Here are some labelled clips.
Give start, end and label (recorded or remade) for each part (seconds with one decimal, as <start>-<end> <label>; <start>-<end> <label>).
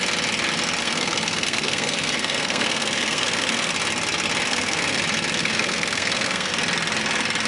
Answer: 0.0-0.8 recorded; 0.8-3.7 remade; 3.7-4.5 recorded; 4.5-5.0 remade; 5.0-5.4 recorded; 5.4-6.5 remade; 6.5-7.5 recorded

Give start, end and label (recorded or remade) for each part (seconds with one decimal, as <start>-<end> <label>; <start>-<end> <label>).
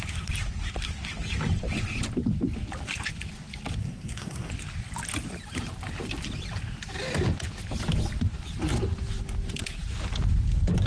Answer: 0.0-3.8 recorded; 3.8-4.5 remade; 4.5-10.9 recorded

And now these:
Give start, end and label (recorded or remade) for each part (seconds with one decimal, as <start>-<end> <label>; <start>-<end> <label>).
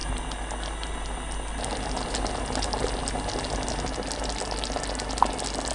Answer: 0.0-5.7 recorded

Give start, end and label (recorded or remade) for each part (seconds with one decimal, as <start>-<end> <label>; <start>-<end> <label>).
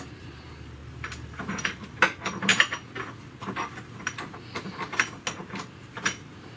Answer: 0.0-0.8 remade; 0.8-1.7 recorded; 1.7-2.5 remade; 2.5-5.8 recorded; 5.8-6.6 remade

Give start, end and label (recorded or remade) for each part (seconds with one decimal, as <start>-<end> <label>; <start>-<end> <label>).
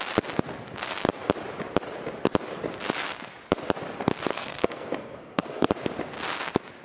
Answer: 0.0-4.3 recorded; 4.3-5.7 remade; 5.7-6.8 recorded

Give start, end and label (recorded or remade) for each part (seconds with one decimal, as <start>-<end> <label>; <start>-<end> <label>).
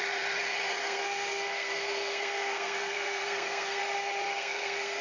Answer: 0.0-0.8 recorded; 0.8-3.8 remade; 3.8-4.3 recorded; 4.3-5.0 remade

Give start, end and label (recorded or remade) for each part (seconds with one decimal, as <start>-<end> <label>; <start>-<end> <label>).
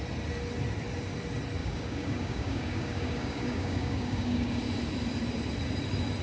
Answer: 0.0-1.6 recorded; 1.6-4.6 remade; 4.6-6.2 recorded